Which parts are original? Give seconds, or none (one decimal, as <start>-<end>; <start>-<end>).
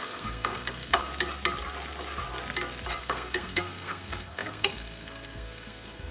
1.1-3.0